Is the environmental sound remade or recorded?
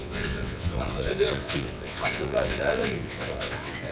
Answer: remade